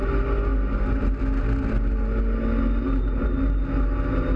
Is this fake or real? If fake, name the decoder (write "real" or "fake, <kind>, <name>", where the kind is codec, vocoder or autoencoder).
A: real